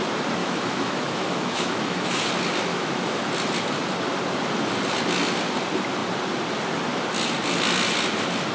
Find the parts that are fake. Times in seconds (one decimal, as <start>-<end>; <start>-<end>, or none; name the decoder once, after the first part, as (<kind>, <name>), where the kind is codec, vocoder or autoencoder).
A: 0.4-2.3 (autoencoder, DAC-VAE); 2.7-3.2